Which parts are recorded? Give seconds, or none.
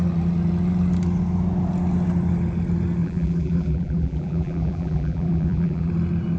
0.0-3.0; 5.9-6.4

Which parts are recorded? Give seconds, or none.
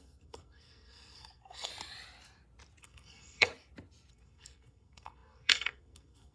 1.7-2.8; 3.5-4.1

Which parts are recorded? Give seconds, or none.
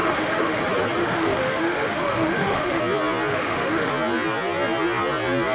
0.6-1.0; 2.8-3.3; 3.9-5.5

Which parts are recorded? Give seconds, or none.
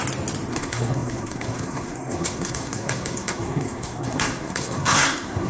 0.0-0.5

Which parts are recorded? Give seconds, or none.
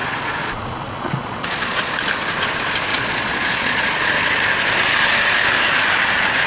1.9-2.9; 4.1-6.5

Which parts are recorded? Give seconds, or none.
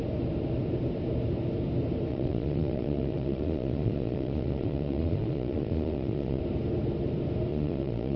0.0-2.1; 6.4-7.5